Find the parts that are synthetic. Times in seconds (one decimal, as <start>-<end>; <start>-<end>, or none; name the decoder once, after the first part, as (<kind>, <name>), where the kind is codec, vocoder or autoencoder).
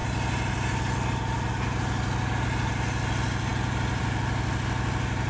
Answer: none